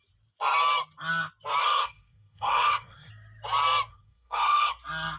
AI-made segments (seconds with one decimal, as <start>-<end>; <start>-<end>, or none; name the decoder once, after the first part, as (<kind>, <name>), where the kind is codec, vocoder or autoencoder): 1.6-3.1 (codec, SNAC); 3.9-4.7